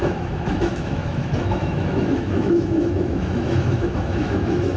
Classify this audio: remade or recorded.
remade